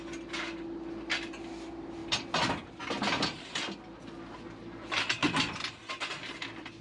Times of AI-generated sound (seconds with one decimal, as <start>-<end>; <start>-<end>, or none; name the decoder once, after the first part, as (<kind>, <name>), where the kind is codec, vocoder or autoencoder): none